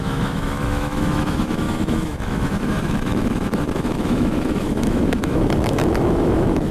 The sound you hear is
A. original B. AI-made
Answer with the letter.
B